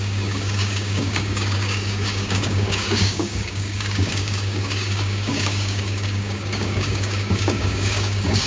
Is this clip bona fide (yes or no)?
no